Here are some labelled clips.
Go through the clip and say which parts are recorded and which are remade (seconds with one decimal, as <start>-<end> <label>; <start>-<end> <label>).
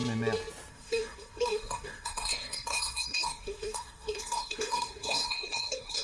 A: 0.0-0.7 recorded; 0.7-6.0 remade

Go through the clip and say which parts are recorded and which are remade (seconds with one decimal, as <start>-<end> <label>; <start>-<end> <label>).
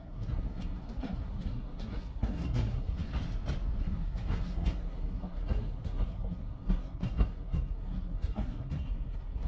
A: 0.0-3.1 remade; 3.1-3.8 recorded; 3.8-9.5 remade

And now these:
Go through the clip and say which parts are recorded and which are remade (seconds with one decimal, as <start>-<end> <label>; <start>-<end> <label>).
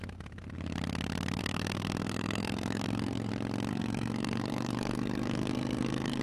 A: 0.0-1.4 recorded; 1.4-3.3 remade; 3.3-3.7 recorded; 3.7-6.2 remade